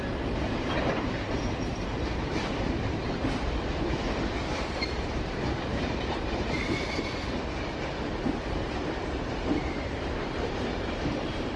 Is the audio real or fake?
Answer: fake